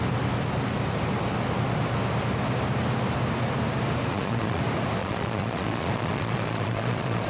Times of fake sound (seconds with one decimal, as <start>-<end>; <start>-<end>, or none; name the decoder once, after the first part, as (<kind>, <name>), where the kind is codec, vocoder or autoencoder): 4.1-4.6 (vocoder, Vocos); 5.0-7.3